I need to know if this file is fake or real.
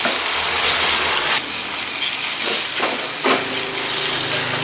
real